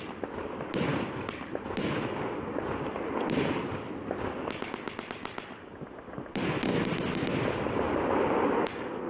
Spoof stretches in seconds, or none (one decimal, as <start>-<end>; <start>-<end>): none